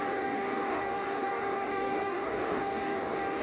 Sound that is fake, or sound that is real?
fake